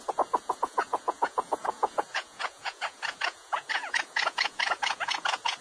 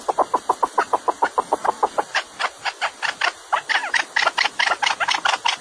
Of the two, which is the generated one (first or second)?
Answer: first